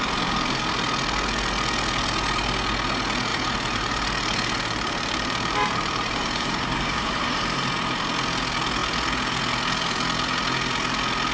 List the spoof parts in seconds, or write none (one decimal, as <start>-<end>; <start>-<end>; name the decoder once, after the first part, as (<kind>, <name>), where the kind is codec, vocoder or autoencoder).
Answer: 3.3-7.8 (vocoder, BigVGAN v2)